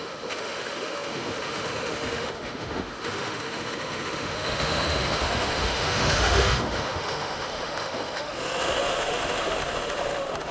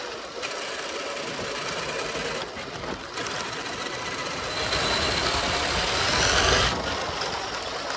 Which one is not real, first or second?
first